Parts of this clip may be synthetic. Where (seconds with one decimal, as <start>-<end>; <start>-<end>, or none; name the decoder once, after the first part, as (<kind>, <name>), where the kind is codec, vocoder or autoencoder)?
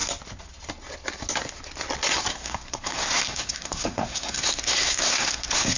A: 2.3-5.8 (codec, SNAC)